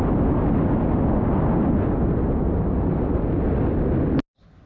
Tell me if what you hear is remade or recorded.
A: recorded